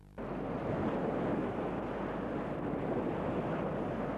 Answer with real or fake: fake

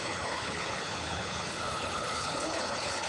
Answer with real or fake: fake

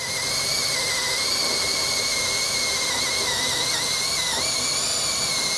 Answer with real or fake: real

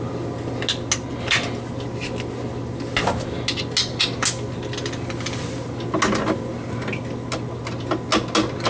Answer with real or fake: real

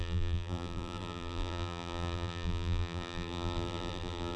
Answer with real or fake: fake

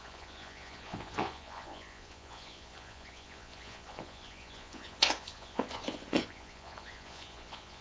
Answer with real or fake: fake